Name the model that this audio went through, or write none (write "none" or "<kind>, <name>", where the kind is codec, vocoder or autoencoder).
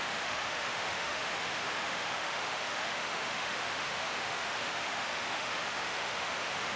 autoencoder, DAC-VAE